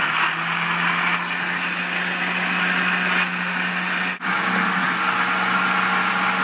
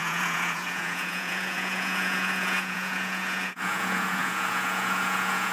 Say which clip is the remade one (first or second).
second